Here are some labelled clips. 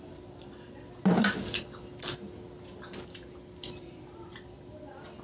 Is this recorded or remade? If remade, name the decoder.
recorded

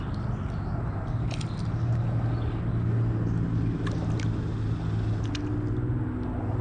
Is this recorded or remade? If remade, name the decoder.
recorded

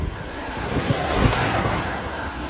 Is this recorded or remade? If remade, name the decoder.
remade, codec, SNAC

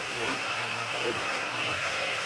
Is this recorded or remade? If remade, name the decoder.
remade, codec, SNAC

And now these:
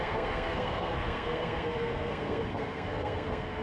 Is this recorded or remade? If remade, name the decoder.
remade, codec, SNAC